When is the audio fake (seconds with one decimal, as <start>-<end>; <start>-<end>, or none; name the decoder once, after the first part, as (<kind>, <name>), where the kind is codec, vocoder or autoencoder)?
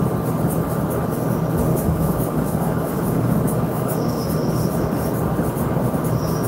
1.7-4.2 (codec, DAC)